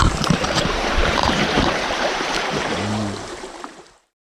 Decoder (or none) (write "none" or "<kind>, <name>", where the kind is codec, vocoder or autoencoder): vocoder, BigVGAN v2